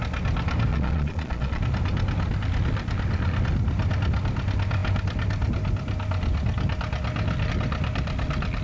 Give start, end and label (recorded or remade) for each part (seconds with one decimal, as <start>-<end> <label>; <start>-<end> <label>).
0.0-0.7 recorded; 0.7-1.6 remade; 1.6-8.6 recorded